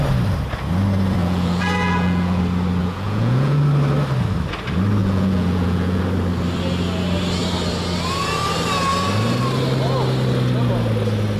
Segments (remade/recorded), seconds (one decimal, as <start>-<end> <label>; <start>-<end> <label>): 0.0-1.2 recorded; 1.2-2.4 remade; 2.4-2.8 recorded; 2.8-3.6 remade; 3.6-5.0 recorded; 5.0-6.0 remade; 6.0-11.4 recorded